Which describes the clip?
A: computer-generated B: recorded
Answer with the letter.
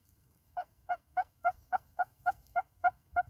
A